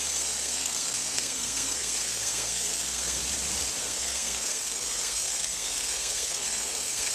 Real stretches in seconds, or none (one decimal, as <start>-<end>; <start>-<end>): 3.2-3.8